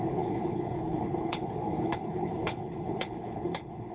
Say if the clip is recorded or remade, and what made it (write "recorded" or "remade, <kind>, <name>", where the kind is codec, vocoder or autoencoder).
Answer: remade, codec, HILCodec